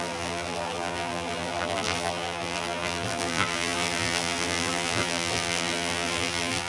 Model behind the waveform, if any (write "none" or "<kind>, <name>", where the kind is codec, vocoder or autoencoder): vocoder, BigVGAN v2